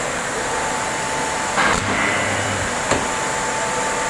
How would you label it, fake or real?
fake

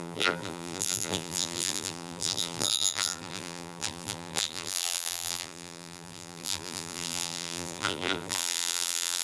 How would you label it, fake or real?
fake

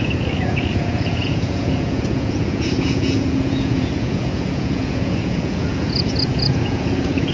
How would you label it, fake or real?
fake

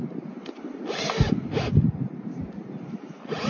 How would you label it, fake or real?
real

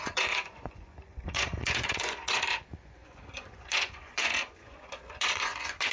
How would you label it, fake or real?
fake